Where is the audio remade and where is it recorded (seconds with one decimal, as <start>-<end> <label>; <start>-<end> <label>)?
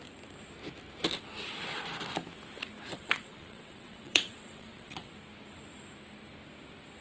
0.0-2.9 recorded; 2.9-5.1 remade; 5.1-7.0 recorded